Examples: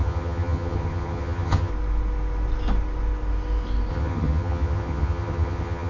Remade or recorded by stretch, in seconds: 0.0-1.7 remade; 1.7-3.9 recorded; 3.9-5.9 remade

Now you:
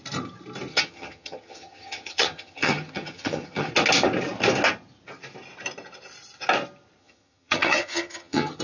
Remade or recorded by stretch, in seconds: 0.0-0.7 recorded; 0.7-3.7 remade; 3.7-7.0 recorded; 7.0-8.6 remade

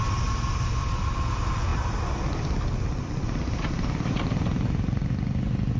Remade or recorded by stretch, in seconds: 0.0-5.8 recorded

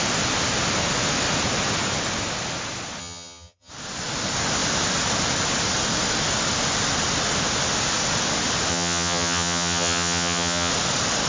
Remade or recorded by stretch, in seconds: 0.0-3.0 recorded; 3.0-3.7 remade; 3.7-8.7 recorded; 8.7-10.7 remade; 10.7-11.3 recorded

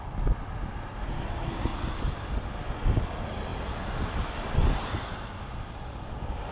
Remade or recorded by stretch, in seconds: 0.0-6.5 recorded